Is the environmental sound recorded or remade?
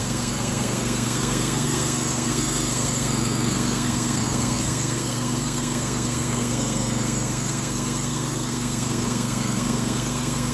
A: remade